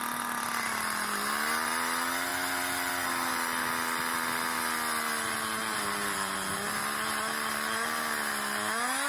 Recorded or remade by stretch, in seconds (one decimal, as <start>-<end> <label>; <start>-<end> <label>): 0.0-9.1 recorded

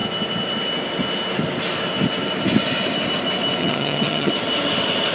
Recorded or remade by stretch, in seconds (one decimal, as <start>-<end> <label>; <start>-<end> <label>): 0.0-3.6 recorded; 3.6-4.3 remade; 4.3-5.1 recorded